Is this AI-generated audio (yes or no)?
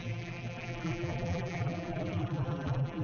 yes